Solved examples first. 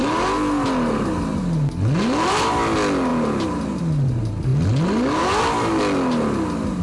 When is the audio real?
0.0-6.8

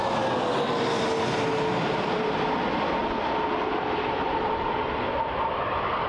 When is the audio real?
0.0-6.1